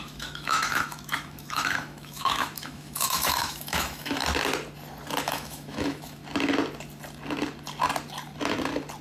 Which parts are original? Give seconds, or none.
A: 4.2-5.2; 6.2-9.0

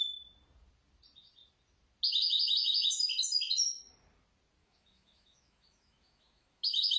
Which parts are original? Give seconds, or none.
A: 0.0-4.6

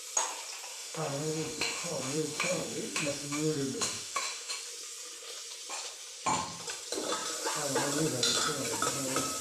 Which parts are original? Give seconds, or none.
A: 0.0-0.7; 4.5-9.4

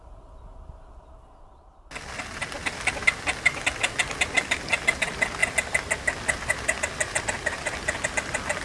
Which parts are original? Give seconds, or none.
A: 0.0-8.6